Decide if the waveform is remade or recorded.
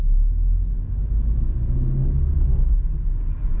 recorded